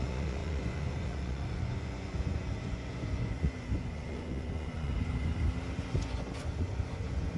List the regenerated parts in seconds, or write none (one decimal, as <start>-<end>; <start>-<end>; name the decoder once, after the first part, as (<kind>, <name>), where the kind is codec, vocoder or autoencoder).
0.0-5.3 (vocoder, Vocos); 5.8-7.4